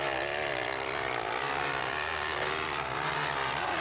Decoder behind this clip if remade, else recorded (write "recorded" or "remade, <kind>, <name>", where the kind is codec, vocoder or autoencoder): recorded